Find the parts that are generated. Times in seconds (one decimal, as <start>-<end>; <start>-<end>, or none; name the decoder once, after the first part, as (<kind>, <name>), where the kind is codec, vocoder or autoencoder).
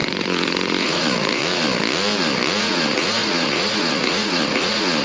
0.0-1.4 (vocoder, Vocos); 2.6-5.0